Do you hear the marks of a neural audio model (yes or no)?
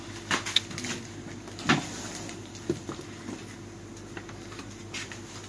no